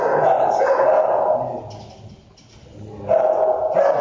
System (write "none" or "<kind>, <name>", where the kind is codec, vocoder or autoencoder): none